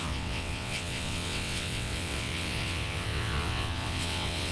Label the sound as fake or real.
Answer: fake